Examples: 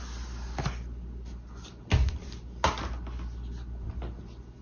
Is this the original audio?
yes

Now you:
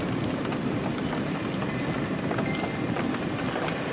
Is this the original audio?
yes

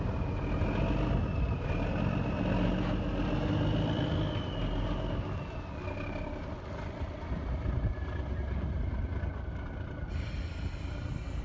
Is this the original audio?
yes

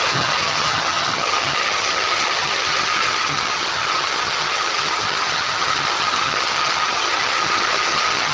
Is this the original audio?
no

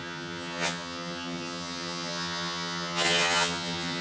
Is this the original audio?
no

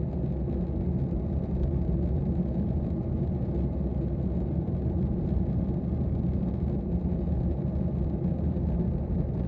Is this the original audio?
yes